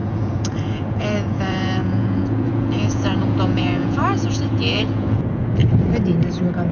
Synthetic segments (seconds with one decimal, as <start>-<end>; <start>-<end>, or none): 0.0-5.6